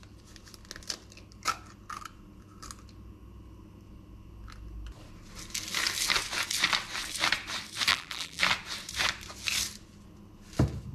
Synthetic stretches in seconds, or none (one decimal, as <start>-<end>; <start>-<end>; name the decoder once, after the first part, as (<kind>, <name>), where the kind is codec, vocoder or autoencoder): 7.9-8.4 (vocoder, BigVGAN v2)